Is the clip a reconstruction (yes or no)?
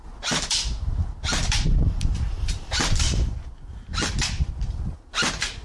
no